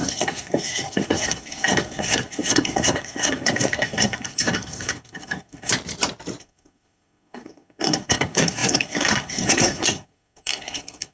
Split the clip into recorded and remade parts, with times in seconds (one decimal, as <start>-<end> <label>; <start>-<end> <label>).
0.0-5.7 remade; 5.7-6.4 recorded; 6.4-11.1 remade